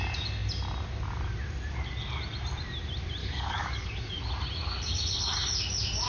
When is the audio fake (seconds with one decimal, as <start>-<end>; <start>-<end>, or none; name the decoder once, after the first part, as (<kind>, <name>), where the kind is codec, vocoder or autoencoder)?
3.2-4.2 (codec, DAC)